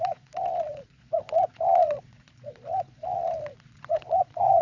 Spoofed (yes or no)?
yes